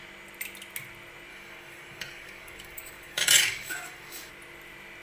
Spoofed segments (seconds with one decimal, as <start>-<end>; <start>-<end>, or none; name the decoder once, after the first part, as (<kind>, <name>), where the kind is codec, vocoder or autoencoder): 1.3-4.3 (codec, DAC)